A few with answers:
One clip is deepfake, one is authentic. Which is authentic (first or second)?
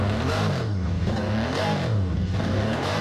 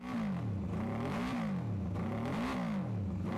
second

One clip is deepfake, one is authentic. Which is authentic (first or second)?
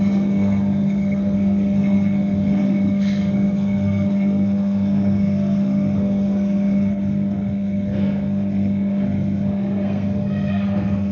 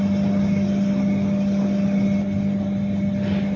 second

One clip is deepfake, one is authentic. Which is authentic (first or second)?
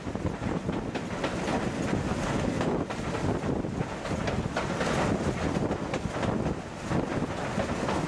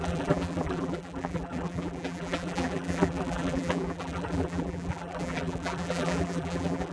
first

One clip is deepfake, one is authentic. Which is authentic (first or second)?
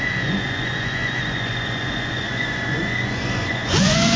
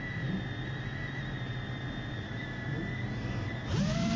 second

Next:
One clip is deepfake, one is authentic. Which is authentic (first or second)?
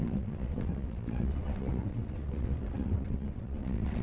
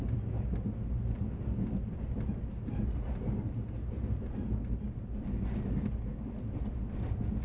second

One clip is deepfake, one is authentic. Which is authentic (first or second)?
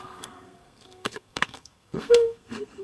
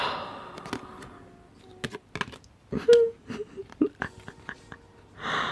second